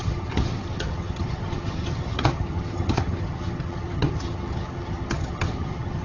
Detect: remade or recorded remade